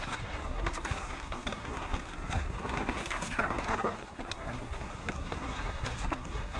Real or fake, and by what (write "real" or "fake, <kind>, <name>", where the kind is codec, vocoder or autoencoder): fake, codec, SNAC